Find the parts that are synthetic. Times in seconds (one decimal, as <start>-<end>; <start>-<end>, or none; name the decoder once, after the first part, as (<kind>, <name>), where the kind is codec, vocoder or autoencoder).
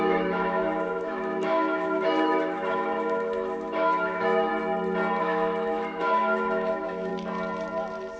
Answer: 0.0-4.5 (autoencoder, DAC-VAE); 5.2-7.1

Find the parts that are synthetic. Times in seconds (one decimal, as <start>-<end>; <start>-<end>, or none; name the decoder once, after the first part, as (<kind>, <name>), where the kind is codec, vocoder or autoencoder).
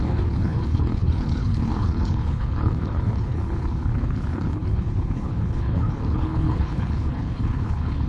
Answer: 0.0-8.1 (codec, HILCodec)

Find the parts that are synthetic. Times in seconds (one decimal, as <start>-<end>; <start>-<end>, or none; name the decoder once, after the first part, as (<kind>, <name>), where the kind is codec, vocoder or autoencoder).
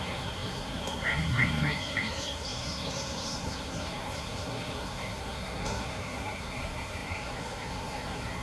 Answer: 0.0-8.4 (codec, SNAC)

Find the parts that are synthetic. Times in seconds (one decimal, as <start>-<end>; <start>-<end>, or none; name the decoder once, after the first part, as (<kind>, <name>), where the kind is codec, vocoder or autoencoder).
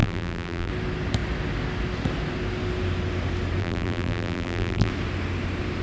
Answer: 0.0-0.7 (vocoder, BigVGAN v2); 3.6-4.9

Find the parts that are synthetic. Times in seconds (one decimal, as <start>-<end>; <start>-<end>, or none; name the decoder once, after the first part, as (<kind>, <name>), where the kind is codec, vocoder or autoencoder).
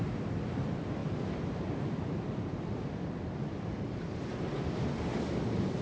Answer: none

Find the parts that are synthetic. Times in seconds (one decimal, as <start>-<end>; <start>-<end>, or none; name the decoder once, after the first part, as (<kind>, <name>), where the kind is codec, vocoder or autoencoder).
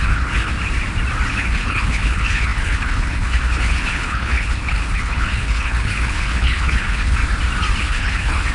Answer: 0.0-0.5 (codec, HILCodec); 1.3-7.2; 7.8-8.5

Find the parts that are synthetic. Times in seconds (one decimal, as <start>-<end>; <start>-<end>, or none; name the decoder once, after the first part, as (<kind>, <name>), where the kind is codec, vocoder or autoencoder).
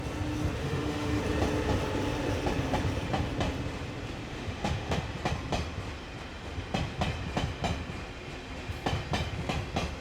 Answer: 0.6-1.2 (autoencoder, DAC-VAE); 4.3-5.0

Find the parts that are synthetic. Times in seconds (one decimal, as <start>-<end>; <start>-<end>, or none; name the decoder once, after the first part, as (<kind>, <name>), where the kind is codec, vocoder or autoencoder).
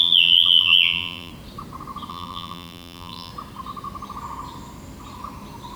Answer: 0.0-1.3 (vocoder, BigVGAN v2); 2.1-3.3